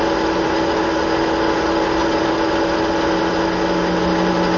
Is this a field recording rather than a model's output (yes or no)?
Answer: yes